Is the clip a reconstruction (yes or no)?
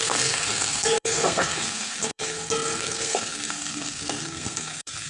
yes